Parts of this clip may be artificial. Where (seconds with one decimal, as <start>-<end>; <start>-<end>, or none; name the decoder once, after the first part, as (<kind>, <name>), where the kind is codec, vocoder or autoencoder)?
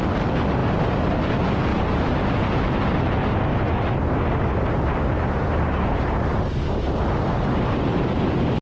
1.7-2.2 (vocoder, BigVGAN v2); 3.5-7.0